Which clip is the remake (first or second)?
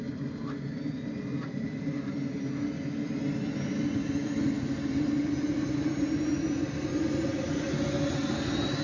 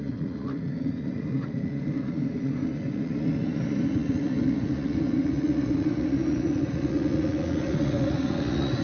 second